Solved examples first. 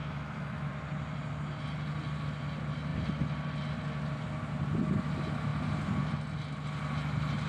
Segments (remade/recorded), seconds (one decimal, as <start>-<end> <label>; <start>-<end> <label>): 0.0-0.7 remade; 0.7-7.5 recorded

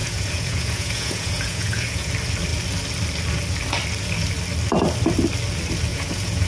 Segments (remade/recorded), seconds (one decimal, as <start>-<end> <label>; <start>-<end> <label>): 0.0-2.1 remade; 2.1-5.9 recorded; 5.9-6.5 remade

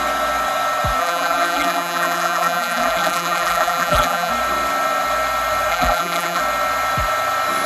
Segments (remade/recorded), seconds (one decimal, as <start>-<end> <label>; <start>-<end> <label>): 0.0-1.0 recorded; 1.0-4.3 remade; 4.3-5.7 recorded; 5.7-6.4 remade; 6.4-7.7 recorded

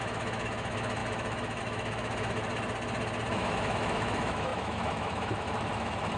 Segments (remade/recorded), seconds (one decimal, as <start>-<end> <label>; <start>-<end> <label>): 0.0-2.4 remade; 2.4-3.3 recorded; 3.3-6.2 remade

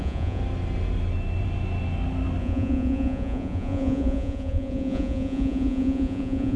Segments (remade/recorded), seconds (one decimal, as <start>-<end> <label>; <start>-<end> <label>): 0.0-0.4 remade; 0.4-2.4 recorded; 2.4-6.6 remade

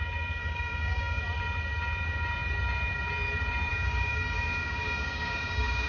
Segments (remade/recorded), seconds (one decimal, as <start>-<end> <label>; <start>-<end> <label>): 0.0-0.4 recorded; 0.4-1.2 remade; 1.2-3.7 recorded; 3.7-5.9 remade